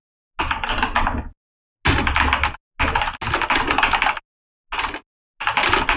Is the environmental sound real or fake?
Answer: real